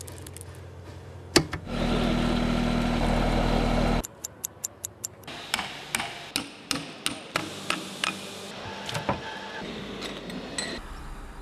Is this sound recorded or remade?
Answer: recorded